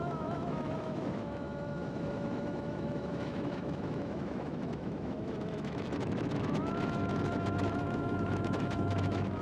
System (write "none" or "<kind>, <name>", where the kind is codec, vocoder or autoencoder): autoencoder, DAC-VAE